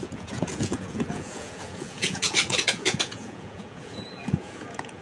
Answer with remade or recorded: remade